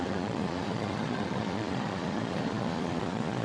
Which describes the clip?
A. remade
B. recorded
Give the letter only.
A